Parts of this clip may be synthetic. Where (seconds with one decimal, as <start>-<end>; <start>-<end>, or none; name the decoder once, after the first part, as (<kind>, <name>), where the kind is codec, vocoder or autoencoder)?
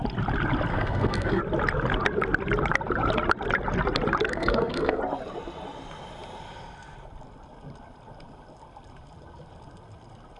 0.7-1.4 (codec, SNAC); 4.3-5.0